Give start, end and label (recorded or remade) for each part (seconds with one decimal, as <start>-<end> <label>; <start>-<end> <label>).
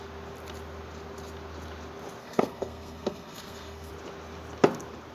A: 0.0-2.2 recorded; 2.2-3.9 remade; 3.9-5.1 recorded